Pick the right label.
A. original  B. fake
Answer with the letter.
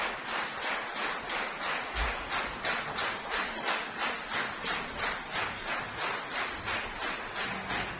A